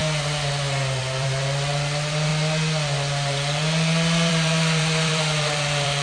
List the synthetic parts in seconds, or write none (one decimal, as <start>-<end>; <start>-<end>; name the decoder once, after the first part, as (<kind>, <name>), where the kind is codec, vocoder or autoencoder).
1.0-2.3 (vocoder, BigVGAN v2); 4.3-6.0